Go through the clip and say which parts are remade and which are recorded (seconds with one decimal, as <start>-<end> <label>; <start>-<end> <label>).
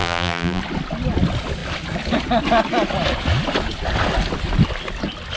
0.0-0.6 remade; 0.6-5.4 recorded